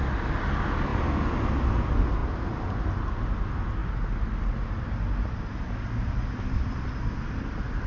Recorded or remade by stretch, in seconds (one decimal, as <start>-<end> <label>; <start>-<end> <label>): 0.0-7.9 recorded